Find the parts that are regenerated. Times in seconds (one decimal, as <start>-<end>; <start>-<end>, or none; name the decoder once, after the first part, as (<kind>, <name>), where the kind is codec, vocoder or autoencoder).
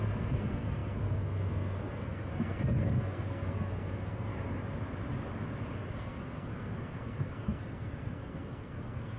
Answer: 0.0-4.3 (codec, SNAC); 5.9-9.2